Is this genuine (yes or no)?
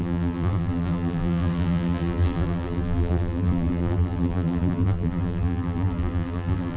no